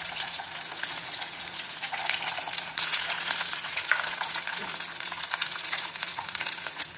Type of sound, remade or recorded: remade